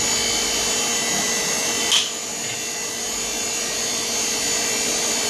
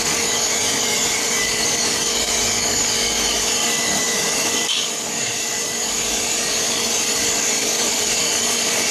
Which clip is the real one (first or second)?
first